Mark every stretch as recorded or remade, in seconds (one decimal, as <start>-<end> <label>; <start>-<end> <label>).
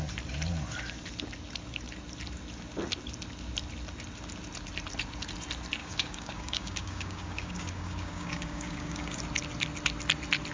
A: 0.0-5.8 recorded; 5.8-9.2 remade; 9.2-10.5 recorded